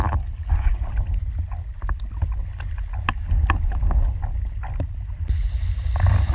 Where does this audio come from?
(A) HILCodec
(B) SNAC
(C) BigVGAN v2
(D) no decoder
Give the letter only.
D